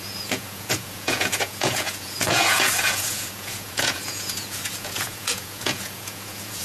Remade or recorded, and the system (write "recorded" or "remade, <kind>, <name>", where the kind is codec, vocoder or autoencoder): remade, vocoder, Vocos